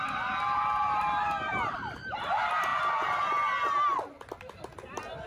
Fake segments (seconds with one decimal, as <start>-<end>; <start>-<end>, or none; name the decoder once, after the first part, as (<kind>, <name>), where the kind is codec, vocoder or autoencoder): 2.7-3.3 (vocoder, BigVGAN v2)